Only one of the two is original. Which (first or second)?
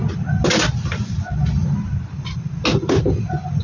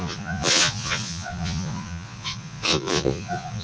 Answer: first